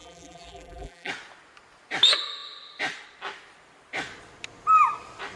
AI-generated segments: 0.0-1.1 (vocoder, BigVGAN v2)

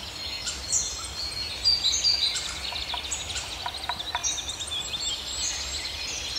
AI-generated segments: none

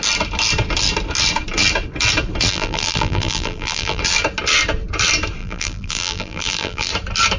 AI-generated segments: 2.5-4.0 (vocoder, BigVGAN v2); 5.4-6.9

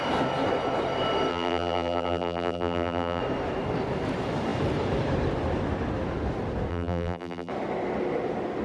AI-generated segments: 1.3-3.2 (vocoder, BigVGAN v2); 6.7-7.5